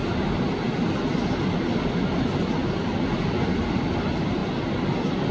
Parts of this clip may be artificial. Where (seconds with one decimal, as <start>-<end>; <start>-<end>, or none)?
none